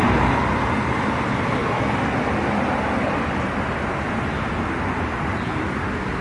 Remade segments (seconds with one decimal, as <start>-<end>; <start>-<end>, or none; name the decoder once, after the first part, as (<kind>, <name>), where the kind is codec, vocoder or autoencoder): none